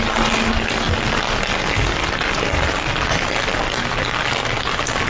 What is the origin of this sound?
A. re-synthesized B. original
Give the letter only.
B